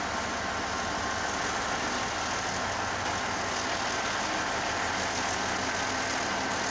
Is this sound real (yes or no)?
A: yes